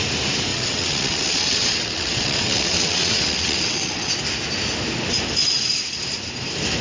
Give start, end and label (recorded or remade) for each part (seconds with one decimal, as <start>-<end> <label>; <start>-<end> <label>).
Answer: 0.0-0.5 recorded; 0.5-4.1 remade; 4.1-6.8 recorded